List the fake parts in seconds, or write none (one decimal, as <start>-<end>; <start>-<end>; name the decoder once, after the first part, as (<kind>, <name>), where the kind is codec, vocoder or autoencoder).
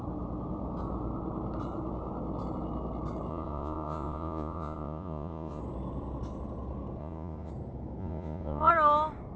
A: 3.3-5.6 (vocoder, Vocos); 7.0-7.5; 8.0-8.7